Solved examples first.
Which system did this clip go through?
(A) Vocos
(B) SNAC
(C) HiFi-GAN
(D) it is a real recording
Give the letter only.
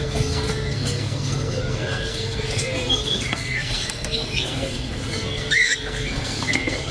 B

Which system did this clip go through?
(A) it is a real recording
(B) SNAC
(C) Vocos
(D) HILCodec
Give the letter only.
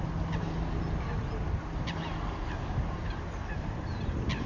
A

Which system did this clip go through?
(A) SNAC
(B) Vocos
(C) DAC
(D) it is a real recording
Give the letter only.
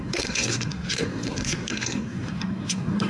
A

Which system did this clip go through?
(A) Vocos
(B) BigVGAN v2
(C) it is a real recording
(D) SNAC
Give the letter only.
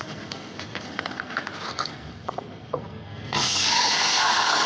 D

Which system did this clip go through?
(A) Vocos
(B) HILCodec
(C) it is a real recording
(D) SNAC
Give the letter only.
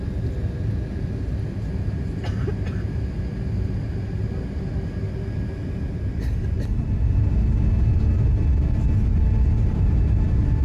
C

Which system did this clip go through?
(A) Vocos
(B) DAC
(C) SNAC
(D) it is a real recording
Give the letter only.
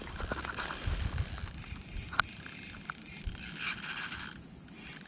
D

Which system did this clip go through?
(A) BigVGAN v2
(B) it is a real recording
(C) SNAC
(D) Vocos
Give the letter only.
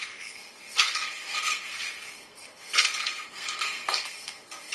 C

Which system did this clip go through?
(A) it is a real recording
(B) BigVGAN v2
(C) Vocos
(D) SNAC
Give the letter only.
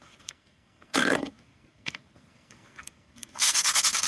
D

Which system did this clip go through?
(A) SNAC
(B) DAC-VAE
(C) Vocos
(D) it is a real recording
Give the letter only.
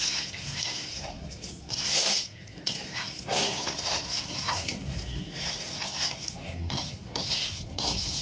A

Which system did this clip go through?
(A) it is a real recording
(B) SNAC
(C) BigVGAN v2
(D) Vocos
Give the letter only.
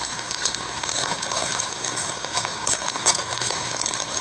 B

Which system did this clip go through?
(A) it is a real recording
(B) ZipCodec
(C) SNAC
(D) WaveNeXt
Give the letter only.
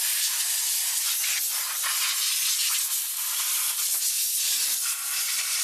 A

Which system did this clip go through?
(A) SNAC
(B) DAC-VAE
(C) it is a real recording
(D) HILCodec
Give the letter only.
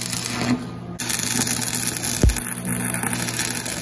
C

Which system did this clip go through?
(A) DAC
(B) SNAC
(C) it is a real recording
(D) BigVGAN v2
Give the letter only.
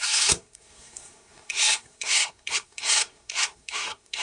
B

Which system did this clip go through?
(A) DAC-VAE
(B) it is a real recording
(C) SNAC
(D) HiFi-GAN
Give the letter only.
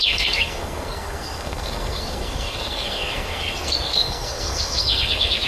C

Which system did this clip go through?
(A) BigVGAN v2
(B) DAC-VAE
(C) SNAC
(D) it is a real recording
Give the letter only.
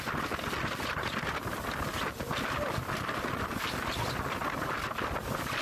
D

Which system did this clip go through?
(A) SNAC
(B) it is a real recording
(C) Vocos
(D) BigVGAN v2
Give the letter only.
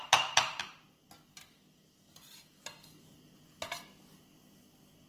B